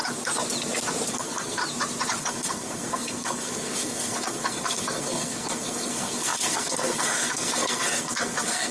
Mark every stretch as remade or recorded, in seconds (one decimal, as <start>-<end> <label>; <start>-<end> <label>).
0.0-1.1 recorded; 1.1-1.6 remade; 1.6-2.2 recorded; 2.2-8.7 remade